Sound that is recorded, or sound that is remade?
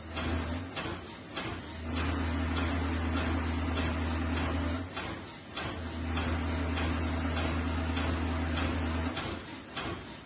recorded